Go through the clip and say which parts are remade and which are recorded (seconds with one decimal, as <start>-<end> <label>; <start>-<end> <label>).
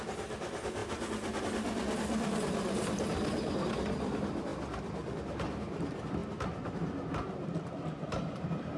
0.0-8.8 recorded